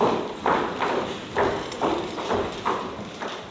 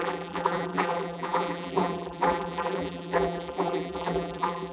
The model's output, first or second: second